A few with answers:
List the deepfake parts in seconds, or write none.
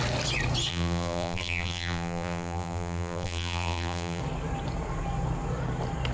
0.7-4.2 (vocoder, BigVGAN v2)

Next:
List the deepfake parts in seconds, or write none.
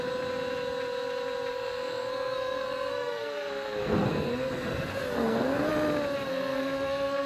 1.5-5.7 (codec, SNAC); 6.3-7.3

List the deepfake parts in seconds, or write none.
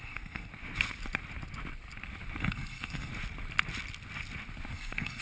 0.0-0.5 (codec, SNAC); 2.4-3.1; 4.7-5.2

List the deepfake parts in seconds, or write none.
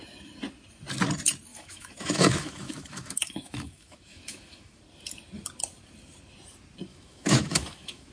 1.5-4.8 (autoencoder, DAC-VAE); 6.9-8.1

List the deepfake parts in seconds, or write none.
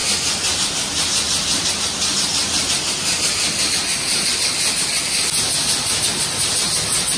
none